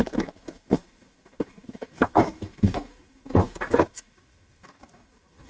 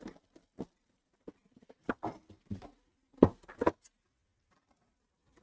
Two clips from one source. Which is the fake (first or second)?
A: first